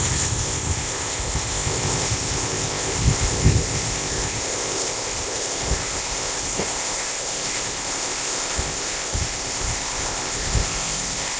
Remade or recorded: remade